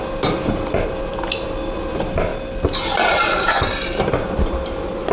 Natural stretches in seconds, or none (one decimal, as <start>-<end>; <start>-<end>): 2.3-4.3